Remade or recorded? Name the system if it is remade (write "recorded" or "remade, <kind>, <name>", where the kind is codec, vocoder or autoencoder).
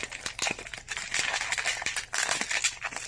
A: recorded